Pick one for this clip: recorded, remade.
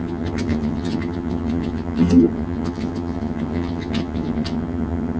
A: remade